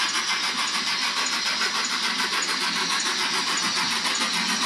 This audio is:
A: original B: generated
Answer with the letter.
A